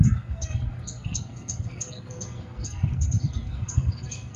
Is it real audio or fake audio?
fake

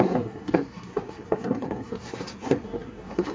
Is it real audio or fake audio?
fake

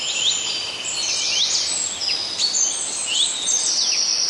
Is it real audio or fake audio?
real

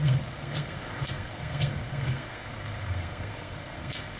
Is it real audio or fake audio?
fake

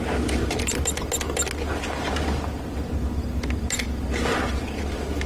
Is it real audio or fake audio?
real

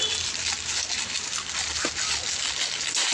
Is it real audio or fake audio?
real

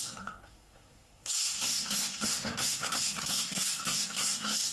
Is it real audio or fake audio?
fake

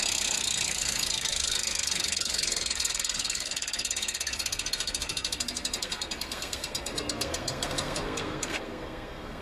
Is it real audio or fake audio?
fake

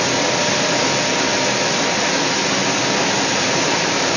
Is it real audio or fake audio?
real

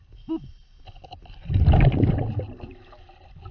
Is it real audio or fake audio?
real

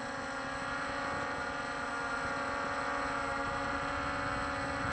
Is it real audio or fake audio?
real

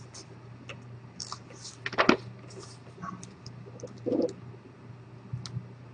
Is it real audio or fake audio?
real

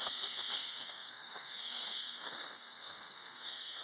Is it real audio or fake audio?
fake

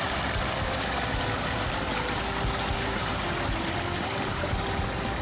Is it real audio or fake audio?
real